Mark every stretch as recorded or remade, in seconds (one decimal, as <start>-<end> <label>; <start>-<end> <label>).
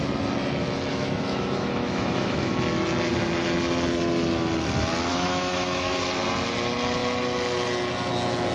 0.0-0.9 recorded; 0.9-2.5 remade; 2.5-5.1 recorded; 5.1-6.0 remade; 6.0-8.5 recorded